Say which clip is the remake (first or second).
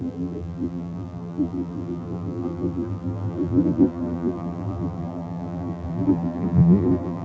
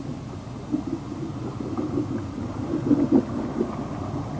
first